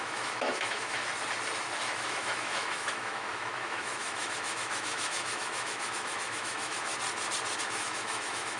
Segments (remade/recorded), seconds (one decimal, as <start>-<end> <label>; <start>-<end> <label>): 0.0-1.0 remade; 1.0-1.8 recorded; 1.8-6.9 remade; 6.9-7.6 recorded; 7.6-8.6 remade